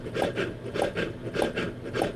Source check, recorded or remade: recorded